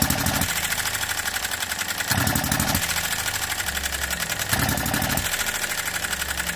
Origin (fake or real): real